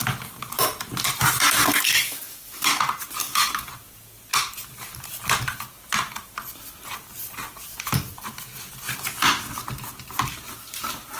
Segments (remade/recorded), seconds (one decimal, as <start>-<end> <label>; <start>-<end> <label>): 0.0-1.6 recorded; 1.6-2.8 remade; 2.8-3.2 recorded; 3.2-3.7 remade; 3.7-11.2 recorded

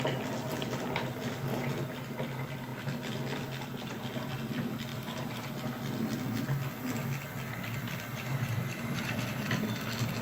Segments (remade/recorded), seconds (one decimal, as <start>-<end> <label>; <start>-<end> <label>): 0.0-4.9 recorded; 4.9-5.5 remade; 5.5-8.1 recorded; 8.1-9.4 remade; 9.4-10.2 recorded

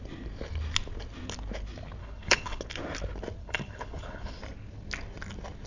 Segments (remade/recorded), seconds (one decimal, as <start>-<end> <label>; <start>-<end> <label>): 0.0-2.0 recorded; 2.0-2.6 remade; 2.6-3.4 recorded; 3.4-4.4 remade; 4.4-5.7 recorded